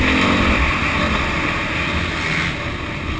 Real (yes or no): yes